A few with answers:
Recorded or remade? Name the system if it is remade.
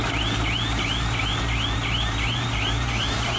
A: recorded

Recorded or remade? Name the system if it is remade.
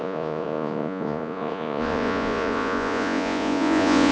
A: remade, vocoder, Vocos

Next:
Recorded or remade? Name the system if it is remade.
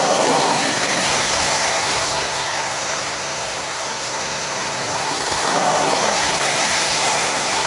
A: remade, codec, SNAC